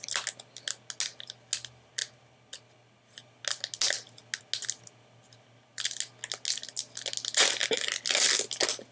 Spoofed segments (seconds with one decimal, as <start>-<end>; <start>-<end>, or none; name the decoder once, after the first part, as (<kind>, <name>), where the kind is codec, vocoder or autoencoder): none